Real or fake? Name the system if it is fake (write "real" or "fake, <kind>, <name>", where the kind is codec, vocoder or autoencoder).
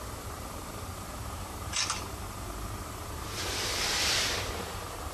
fake, vocoder, BigVGAN v2